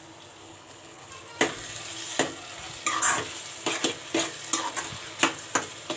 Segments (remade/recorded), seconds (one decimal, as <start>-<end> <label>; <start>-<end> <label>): 0.0-0.4 recorded; 0.4-1.1 remade; 1.1-6.0 recorded